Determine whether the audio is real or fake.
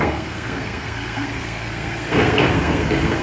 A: fake